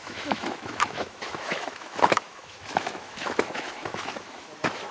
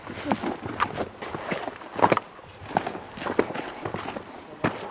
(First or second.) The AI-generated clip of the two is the first